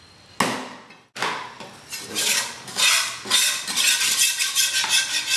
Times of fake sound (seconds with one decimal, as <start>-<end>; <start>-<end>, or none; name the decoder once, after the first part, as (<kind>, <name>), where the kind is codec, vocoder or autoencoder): 2.2-2.8 (codec, DAC)